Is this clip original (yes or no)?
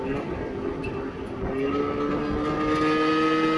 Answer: yes